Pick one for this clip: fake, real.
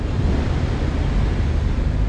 real